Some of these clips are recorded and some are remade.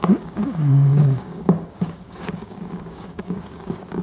remade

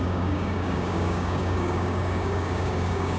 remade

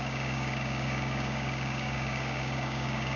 remade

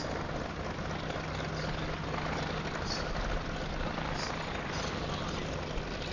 recorded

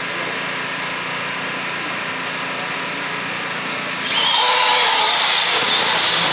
recorded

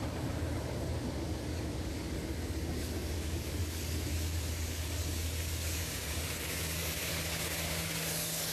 remade